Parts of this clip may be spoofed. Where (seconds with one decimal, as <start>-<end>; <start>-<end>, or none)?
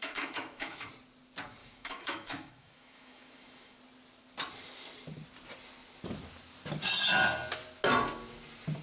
0.0-0.9; 1.6-3.8